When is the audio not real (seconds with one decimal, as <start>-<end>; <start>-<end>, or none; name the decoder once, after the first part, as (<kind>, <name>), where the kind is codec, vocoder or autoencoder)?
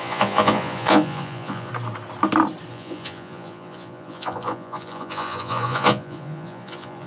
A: 0.0-1.7 (vocoder, Vocos); 2.7-7.1